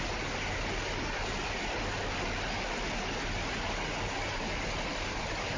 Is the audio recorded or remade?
recorded